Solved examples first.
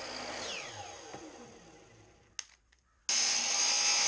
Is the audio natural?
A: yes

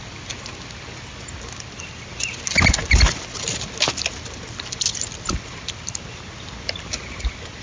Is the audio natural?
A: yes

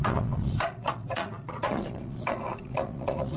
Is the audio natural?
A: no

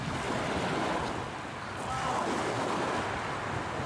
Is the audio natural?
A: yes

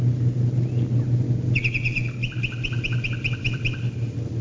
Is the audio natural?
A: yes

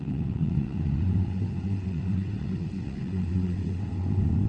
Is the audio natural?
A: no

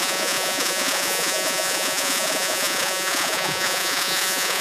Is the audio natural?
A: no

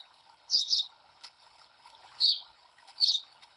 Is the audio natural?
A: no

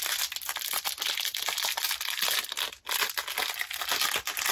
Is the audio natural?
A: yes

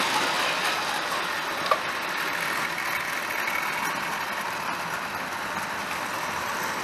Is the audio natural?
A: yes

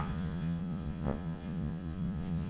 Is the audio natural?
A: no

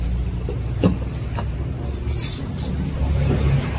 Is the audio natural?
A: yes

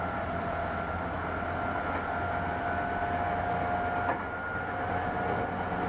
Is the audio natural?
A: yes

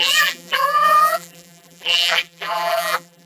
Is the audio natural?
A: no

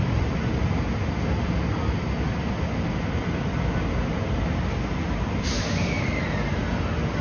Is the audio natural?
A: yes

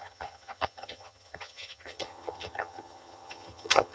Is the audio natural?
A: no